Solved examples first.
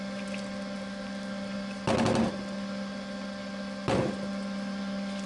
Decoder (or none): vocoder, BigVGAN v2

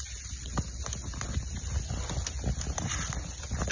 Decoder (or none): none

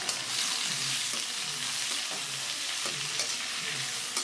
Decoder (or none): none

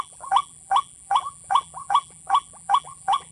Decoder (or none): vocoder, BigVGAN v2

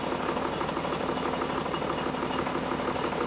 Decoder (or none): none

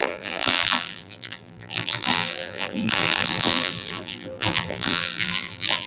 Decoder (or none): vocoder, BigVGAN v2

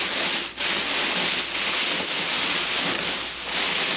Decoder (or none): none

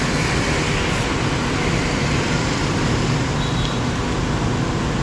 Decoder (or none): none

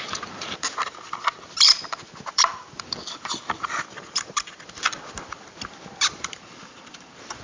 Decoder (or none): vocoder, BigVGAN v2